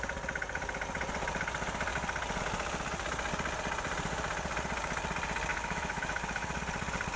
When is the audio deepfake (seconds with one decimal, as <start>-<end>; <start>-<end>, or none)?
5.5-6.6